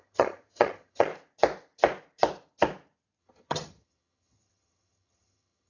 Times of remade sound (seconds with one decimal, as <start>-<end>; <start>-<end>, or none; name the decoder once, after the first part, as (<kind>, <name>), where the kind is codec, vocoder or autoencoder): 0.0-1.1 (vocoder, HiFi-GAN); 3.2-5.7